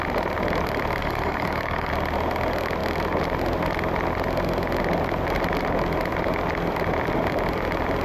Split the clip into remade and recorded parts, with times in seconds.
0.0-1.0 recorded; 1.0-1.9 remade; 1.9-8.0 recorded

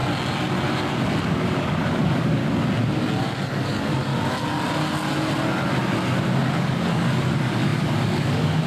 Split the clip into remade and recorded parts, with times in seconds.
0.0-1.2 recorded; 1.2-2.4 remade; 2.4-3.2 recorded; 3.2-4.1 remade; 4.1-6.5 recorded; 6.5-8.7 remade

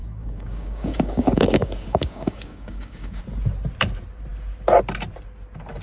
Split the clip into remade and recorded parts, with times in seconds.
0.0-3.2 remade; 3.2-5.8 recorded

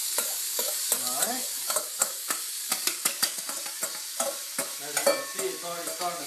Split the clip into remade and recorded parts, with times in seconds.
0.0-3.8 remade; 3.8-6.3 recorded

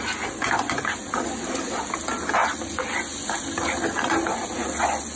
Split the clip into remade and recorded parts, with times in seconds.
0.0-5.2 recorded

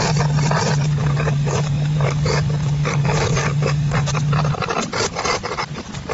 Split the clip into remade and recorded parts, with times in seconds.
0.0-1.0 recorded; 1.0-4.2 remade; 4.2-6.1 recorded

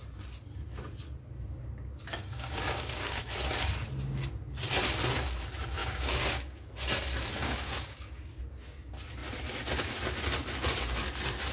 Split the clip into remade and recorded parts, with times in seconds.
0.0-2.2 recorded; 2.2-3.2 remade; 3.2-5.8 recorded; 5.8-6.7 remade; 6.7-7.4 recorded; 7.4-8.4 remade; 8.4-11.5 recorded

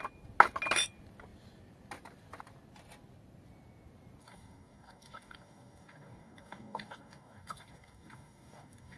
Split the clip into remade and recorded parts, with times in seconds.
0.0-4.2 recorded; 4.2-9.0 remade